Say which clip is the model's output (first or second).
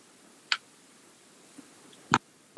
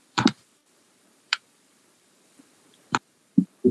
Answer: second